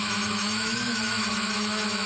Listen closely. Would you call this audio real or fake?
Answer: fake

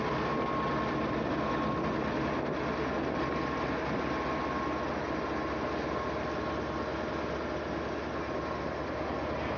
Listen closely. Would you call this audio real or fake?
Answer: real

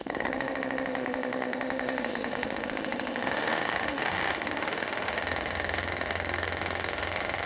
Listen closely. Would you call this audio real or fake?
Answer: fake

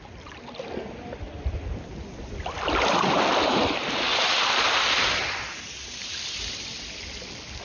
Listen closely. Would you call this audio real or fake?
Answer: real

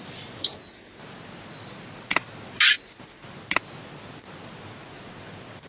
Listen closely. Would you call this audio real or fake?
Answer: real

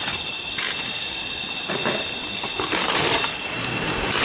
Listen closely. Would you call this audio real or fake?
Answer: real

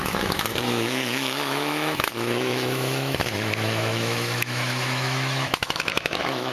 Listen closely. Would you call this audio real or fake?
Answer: fake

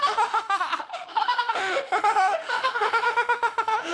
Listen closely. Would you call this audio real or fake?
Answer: fake